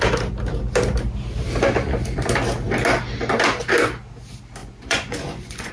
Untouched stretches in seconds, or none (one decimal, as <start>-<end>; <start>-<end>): 0.0-4.6